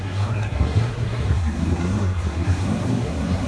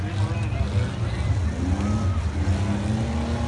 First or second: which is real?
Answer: second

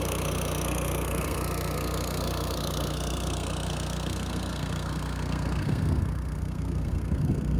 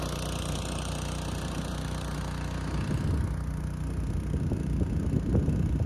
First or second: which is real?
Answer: second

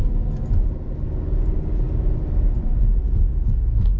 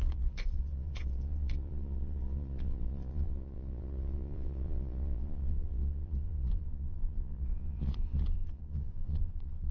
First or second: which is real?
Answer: first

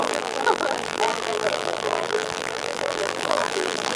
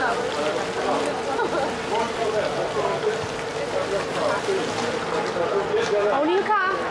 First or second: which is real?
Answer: second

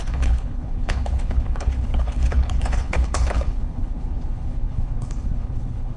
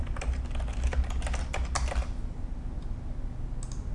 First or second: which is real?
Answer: second